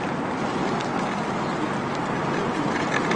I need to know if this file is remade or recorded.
recorded